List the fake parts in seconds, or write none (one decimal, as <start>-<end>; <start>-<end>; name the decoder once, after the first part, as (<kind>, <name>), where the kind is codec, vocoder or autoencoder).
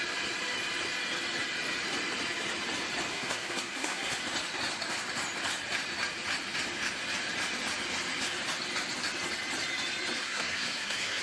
3.1-4.2 (codec, SNAC); 10.2-11.2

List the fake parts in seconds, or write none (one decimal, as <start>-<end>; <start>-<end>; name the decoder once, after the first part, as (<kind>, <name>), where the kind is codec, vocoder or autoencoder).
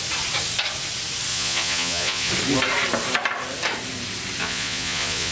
1.3-2.3 (vocoder, Vocos); 4.4-5.3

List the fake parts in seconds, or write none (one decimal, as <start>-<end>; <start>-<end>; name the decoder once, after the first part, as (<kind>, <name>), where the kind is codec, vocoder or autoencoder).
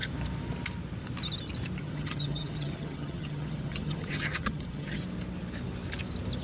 1.8-5.0 (vocoder, HiFi-GAN)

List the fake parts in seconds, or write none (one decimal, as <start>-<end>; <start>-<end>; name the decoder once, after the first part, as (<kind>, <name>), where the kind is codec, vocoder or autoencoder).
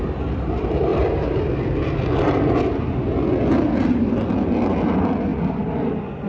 0.9-2.6 (vocoder, BigVGAN v2); 5.3-6.3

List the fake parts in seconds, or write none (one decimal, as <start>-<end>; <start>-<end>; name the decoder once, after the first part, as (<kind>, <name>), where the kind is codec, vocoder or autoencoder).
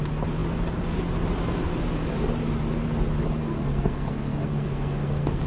3.4-5.5 (codec, SNAC)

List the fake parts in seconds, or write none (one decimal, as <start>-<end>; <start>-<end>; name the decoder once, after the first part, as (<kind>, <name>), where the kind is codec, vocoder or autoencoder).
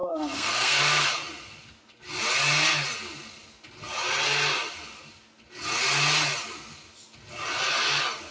0.0-0.8 (codec, SNAC)